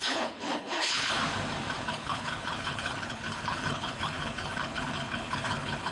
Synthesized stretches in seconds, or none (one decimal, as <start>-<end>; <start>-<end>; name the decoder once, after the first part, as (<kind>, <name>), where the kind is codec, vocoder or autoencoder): 0.0-1.2 (codec, HILCodec); 1.8-5.9

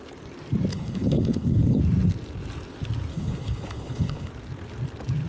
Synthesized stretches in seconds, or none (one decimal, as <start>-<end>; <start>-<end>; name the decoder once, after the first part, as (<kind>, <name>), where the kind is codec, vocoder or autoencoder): 0.7-1.8 (codec, HILCodec); 3.1-4.3

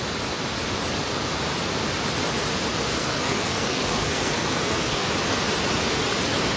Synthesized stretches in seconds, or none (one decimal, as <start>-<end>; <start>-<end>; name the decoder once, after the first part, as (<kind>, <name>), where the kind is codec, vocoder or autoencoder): 2.9-5.1 (codec, SNAC)

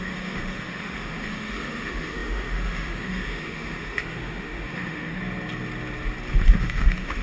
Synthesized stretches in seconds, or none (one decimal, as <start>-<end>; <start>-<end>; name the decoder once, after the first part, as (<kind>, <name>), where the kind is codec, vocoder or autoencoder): 0.0-5.2 (autoencoder, DAC-VAE); 6.6-7.2

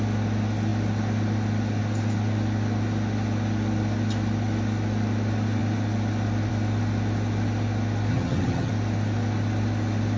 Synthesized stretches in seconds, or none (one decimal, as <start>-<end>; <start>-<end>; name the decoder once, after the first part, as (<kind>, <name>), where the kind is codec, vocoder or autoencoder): 8.1-8.7 (vocoder, HiFi-GAN)

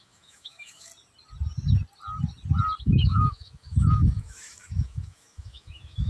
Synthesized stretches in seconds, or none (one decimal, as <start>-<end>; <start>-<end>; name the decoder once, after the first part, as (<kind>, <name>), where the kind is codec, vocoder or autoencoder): 0.0-0.9 (autoencoder, DAC-VAE); 2.8-6.1